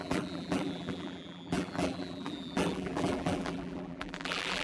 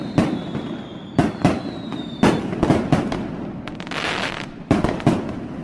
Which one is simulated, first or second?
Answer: first